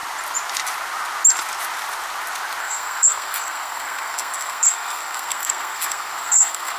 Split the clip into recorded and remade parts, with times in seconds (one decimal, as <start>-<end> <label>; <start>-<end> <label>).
0.0-2.6 recorded; 2.6-6.8 remade

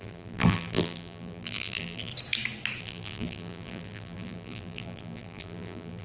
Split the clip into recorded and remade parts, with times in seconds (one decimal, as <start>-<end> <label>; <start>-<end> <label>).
0.0-2.1 remade; 2.1-2.8 recorded; 2.8-6.0 remade

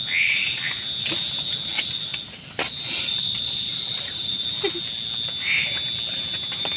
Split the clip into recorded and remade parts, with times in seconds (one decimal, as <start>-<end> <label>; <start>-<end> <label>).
0.0-6.8 recorded

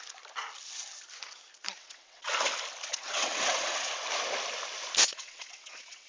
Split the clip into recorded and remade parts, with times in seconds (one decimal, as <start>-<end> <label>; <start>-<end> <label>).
0.0-1.8 recorded; 1.8-2.3 remade; 2.3-2.9 recorded; 2.9-3.9 remade; 3.9-5.1 recorded; 5.1-6.1 remade